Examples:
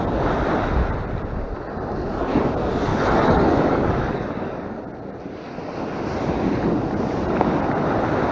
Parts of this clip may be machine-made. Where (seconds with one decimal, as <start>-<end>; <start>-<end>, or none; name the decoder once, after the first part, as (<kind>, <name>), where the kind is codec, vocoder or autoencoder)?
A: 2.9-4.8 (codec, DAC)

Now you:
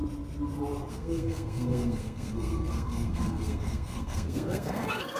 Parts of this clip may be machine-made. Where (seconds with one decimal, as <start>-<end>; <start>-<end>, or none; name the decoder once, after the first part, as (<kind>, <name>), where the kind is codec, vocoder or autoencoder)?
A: 0.9-5.2 (codec, SNAC)

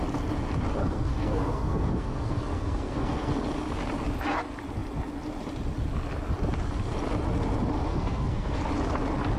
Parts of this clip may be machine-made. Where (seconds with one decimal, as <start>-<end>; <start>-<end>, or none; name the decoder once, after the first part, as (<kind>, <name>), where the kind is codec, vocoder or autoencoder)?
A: 0.8-3.3 (codec, SNAC); 7.9-8.6

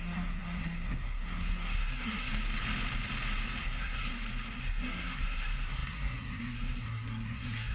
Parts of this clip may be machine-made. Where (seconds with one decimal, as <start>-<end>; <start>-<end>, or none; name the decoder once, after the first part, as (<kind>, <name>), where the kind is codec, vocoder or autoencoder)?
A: 0.0-2.3 (codec, SNAC); 3.6-4.1; 4.6-7.7

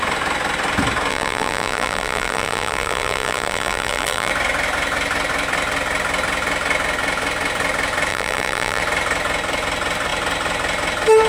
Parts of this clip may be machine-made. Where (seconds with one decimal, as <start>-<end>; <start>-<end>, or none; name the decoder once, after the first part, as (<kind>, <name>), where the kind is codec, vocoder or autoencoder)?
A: 1.1-4.3 (vocoder, BigVGAN v2); 8.1-8.8

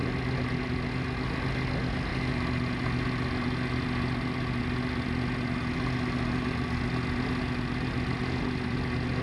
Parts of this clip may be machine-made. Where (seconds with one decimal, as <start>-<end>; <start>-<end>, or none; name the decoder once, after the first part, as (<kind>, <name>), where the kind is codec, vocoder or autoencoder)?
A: none

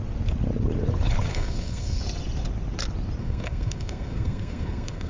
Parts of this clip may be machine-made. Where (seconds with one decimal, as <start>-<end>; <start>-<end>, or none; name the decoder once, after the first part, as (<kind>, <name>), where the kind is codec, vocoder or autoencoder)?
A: 1.3-2.0 (codec, SNAC); 3.2-5.1

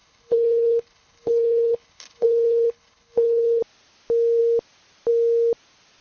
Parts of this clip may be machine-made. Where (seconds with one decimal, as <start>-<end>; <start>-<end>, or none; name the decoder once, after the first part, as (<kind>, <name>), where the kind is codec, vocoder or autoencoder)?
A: 0.0-3.6 (codec, HILCodec)